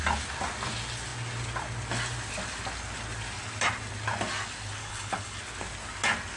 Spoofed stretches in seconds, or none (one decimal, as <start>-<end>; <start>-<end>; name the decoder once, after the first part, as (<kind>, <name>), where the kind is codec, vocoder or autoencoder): 4.8-5.4 (codec, HILCodec)